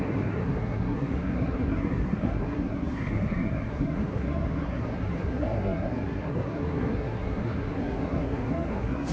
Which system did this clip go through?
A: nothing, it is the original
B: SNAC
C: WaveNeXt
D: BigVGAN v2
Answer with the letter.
B